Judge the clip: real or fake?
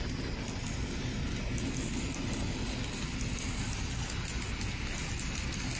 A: real